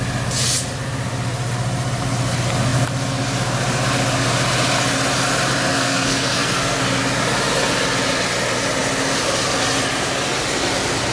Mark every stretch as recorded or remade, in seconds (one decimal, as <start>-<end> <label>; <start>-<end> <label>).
0.0-5.7 recorded; 5.7-6.8 remade; 6.8-11.1 recorded